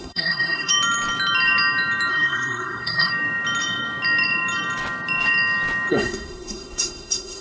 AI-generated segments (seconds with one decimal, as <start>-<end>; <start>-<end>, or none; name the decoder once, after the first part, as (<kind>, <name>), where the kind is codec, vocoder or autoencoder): 0.0-0.7 (codec, SNAC); 2.1-3.1; 5.9-7.4